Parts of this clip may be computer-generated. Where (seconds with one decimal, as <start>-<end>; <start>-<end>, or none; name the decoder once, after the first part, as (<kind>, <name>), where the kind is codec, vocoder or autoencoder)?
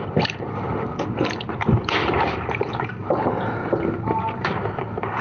2.0-3.2 (vocoder, BigVGAN v2)